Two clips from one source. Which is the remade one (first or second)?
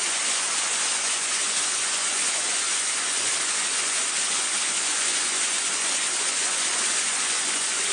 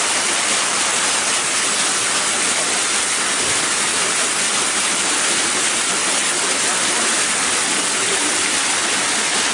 first